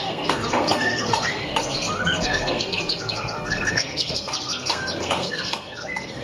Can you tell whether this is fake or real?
fake